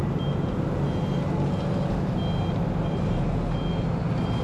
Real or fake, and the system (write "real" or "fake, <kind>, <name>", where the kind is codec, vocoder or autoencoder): real